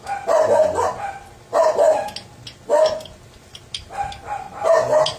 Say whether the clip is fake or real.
real